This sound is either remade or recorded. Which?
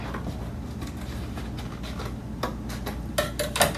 recorded